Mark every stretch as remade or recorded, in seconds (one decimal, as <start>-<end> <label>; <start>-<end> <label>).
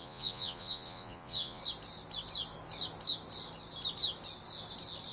0.0-1.6 remade; 1.6-5.1 recorded